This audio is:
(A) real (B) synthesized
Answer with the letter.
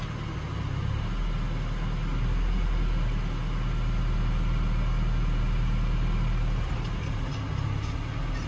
A